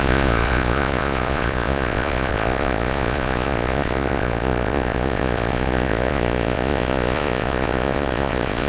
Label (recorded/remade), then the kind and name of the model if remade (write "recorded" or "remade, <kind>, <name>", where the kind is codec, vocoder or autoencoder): remade, vocoder, Vocos